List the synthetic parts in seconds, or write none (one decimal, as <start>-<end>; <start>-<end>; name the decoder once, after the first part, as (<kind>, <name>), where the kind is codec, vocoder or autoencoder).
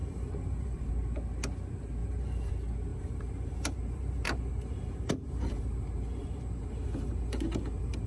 0.0-0.9 (vocoder, BigVGAN v2); 2.0-2.5; 2.9-8.1